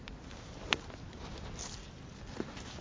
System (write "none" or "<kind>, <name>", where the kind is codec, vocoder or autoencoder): none